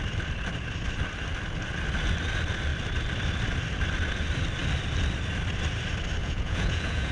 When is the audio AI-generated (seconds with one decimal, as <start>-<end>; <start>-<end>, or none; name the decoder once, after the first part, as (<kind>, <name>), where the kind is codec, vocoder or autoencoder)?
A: 6.2-7.1 (vocoder, Vocos)